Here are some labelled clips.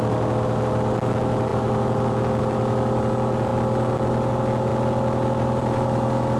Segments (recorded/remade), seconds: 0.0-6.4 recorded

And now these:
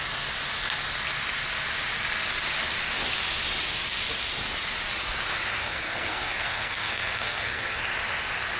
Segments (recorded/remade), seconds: 0.0-5.6 recorded; 5.6-7.8 remade; 7.8-8.6 recorded

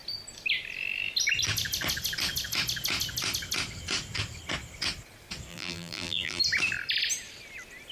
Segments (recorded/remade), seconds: 0.0-5.5 recorded; 5.5-6.4 remade; 6.4-7.9 recorded

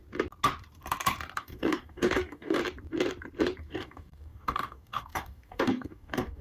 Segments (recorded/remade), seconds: 0.0-1.4 recorded; 1.4-2.6 remade; 2.6-3.6 recorded; 3.6-6.4 remade

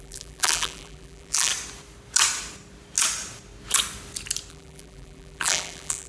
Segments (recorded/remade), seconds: 0.0-1.5 remade; 1.5-4.5 recorded; 4.5-6.1 remade

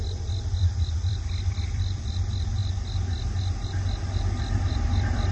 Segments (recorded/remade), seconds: 0.0-2.6 remade; 2.6-4.7 recorded; 4.7-5.3 remade

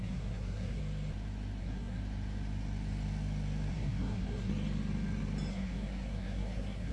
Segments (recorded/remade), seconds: 0.0-0.8 remade; 0.8-1.6 recorded; 1.6-2.0 remade; 2.0-3.7 recorded; 3.7-4.5 remade; 4.5-5.5 recorded; 5.5-6.9 remade